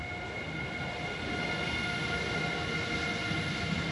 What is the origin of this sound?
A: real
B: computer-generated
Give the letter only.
A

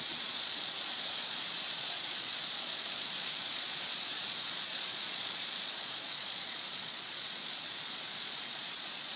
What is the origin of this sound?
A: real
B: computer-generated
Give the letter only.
B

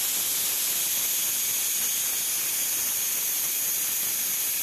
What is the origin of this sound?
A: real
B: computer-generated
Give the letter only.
A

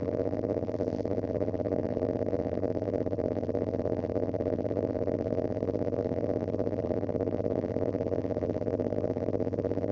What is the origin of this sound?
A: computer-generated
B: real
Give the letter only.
A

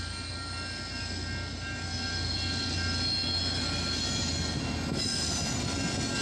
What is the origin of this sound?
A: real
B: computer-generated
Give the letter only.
A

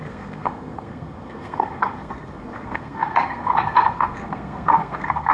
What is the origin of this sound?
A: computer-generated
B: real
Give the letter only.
A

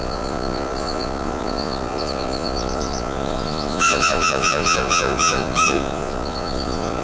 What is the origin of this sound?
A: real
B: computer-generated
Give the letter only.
B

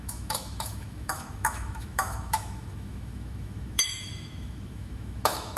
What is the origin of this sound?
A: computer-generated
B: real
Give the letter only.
A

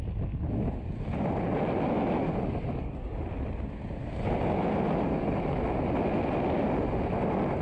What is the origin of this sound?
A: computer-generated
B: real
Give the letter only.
B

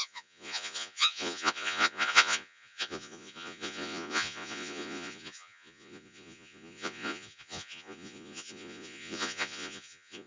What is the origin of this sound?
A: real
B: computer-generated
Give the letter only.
B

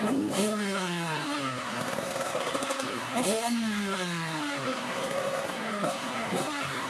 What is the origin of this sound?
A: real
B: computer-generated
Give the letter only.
B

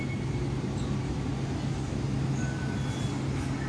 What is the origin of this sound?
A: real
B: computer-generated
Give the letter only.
A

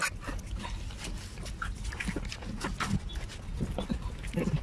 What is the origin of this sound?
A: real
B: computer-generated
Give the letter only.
A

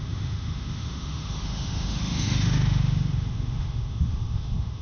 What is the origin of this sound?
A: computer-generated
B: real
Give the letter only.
A